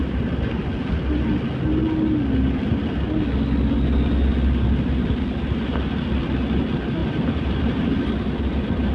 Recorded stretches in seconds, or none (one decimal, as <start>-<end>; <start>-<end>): 0.6-7.0